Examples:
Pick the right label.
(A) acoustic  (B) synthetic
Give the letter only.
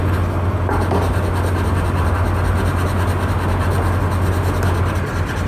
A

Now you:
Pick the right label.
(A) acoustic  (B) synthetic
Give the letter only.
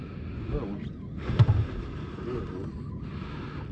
A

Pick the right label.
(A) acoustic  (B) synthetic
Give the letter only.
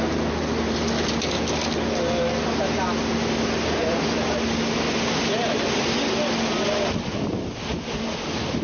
A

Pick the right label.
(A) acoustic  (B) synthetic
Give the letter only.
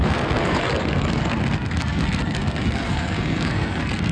B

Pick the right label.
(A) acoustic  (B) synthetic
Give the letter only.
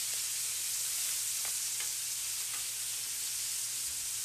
A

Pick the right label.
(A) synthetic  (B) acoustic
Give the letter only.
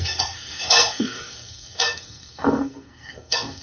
A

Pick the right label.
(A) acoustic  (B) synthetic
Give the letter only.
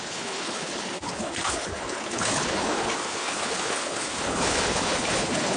B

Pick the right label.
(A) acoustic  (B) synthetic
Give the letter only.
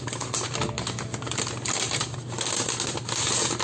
A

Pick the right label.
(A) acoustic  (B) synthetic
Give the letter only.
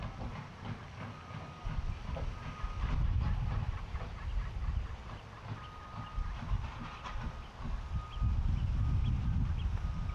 A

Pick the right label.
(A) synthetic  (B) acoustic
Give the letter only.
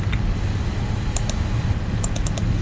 B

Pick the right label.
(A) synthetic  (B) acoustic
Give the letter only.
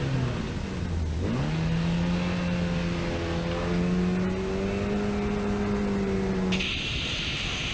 B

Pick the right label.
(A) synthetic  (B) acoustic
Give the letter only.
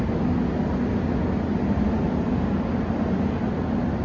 B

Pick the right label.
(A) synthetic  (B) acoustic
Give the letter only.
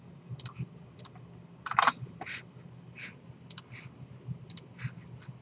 B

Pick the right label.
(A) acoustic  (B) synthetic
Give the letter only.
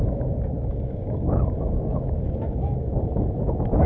B